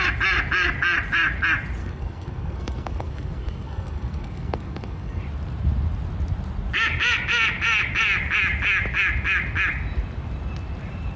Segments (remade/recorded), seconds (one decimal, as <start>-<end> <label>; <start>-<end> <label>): 0.0-1.8 recorded; 1.8-5.2 remade; 5.2-11.2 recorded